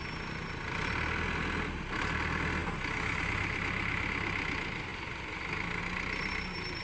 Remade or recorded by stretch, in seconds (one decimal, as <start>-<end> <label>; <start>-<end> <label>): 0.0-6.8 recorded